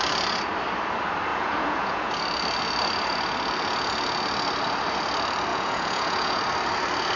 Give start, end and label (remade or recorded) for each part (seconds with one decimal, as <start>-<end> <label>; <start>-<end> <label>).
0.0-1.3 recorded; 1.3-2.1 remade; 2.1-5.5 recorded; 5.5-6.4 remade; 6.4-7.2 recorded

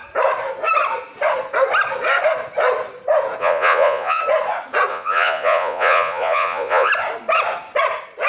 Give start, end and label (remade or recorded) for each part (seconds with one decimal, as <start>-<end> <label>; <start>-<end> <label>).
0.0-3.4 recorded; 3.4-4.2 remade; 4.2-4.9 recorded; 4.9-6.9 remade; 6.9-8.3 recorded

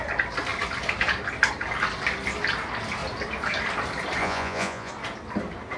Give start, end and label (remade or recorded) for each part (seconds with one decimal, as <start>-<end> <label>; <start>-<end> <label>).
0.0-4.2 recorded; 4.2-4.9 remade; 4.9-5.8 recorded

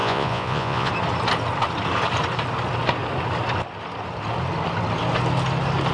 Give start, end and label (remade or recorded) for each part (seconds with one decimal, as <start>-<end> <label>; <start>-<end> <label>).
0.0-0.9 remade; 0.9-5.9 recorded

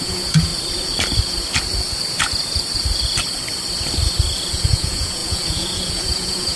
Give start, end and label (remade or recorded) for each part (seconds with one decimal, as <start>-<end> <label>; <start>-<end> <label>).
0.0-0.5 remade; 0.5-4.5 recorded; 4.5-6.6 remade

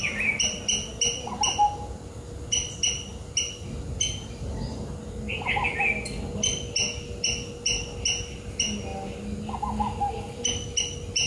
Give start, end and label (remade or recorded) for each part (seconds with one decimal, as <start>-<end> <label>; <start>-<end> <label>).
0.0-11.3 recorded

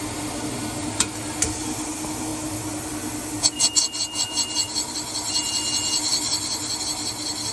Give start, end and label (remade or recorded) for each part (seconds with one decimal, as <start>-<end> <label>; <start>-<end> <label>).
0.0-7.5 recorded